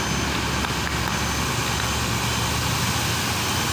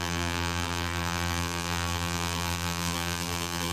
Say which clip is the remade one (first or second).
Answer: second